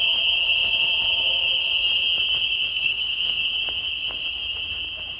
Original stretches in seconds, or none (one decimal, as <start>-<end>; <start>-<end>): 0.0-2.7; 3.4-5.2